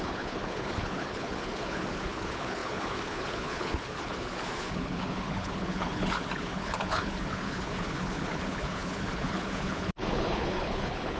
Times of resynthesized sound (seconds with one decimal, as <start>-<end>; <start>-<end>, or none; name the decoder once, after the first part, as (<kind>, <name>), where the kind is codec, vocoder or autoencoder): 0.0-11.2 (codec, HILCodec)